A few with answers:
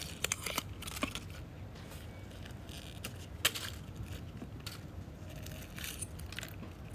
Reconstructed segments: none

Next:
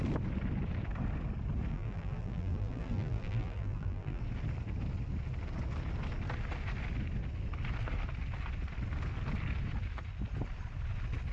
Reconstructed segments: 1.7-4.2

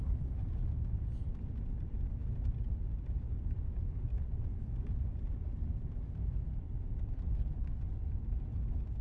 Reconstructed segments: none

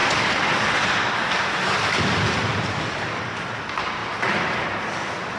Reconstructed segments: 4.0-4.6

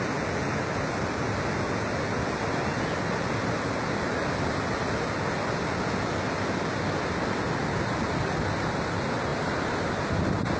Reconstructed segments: 9.3-10.1

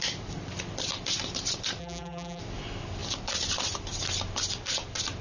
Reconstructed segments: 1.8-2.4

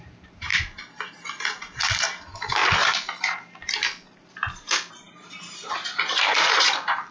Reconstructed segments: 0.0-7.1